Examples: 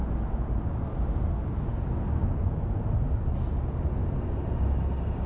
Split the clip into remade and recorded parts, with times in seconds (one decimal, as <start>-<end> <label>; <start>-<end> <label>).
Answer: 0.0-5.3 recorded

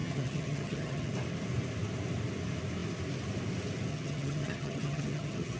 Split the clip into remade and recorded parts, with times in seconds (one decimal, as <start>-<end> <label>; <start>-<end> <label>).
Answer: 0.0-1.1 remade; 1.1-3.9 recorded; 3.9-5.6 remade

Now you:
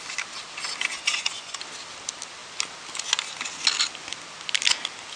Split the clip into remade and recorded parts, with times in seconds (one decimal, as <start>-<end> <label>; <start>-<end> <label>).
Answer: 0.0-0.9 recorded; 0.9-1.6 remade; 1.6-5.2 recorded

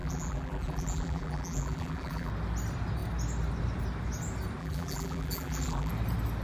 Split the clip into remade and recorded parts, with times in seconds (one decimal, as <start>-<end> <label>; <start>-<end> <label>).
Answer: 0.0-2.3 remade; 2.3-4.6 recorded; 4.6-5.9 remade; 5.9-6.4 recorded